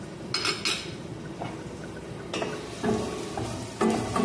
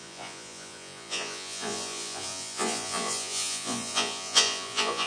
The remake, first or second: second